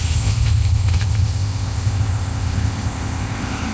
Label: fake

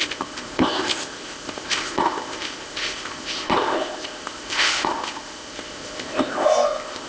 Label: fake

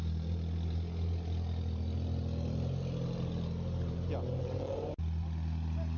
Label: real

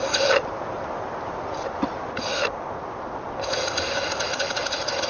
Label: real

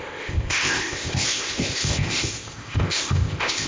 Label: fake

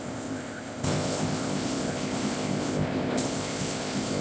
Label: fake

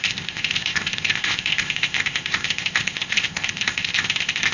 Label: fake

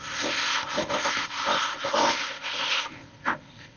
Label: fake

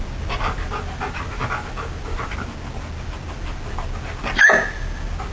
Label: real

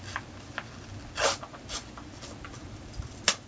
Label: real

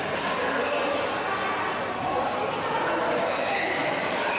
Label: real